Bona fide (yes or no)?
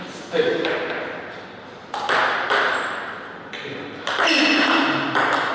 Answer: yes